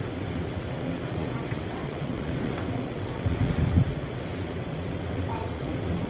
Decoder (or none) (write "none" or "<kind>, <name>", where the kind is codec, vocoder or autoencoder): vocoder, WaveNeXt